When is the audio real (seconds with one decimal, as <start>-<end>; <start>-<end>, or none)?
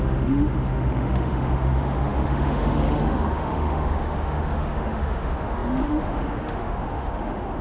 none